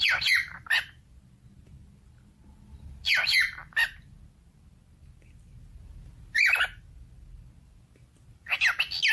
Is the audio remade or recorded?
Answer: recorded